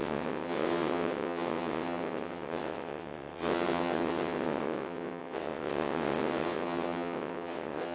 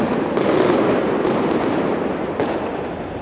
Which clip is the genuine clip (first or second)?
second